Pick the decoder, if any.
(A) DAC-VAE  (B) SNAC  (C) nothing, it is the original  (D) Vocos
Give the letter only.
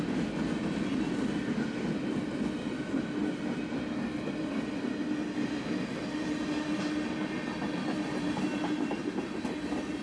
C